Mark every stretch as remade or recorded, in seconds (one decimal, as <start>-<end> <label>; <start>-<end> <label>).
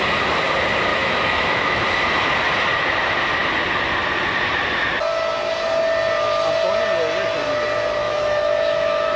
0.0-0.9 recorded; 0.9-1.8 remade; 1.8-8.0 recorded; 8.0-9.2 remade